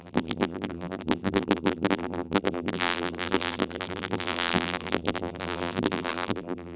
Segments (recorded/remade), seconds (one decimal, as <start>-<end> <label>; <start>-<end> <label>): 0.0-6.8 remade